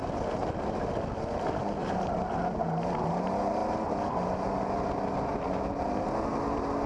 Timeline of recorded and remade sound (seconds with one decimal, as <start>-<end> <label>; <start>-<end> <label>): 0.0-6.9 recorded